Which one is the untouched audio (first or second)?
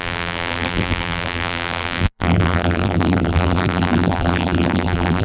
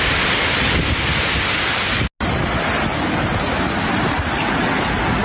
second